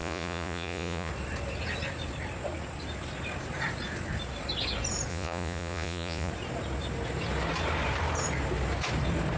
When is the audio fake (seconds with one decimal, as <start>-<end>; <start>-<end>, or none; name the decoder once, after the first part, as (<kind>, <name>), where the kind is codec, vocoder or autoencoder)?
0.0-1.1 (vocoder, Vocos); 5.1-6.3